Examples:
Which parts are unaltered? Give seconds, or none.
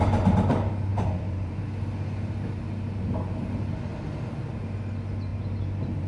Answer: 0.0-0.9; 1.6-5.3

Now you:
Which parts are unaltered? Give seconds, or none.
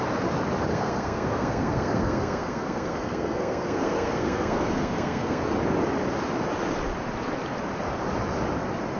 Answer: 0.0-0.7; 5.4-9.0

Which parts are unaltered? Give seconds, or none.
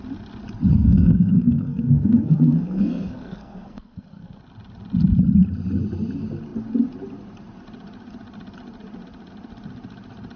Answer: 0.0-0.7; 4.4-10.4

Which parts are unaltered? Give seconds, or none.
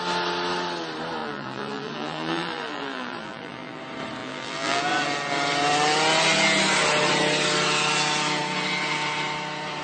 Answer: 0.0-1.2; 3.8-4.2; 4.8-9.8